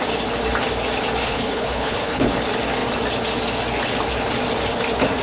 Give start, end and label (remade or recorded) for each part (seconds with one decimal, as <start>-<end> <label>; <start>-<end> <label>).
0.0-1.2 recorded; 1.2-2.3 remade; 2.3-5.2 recorded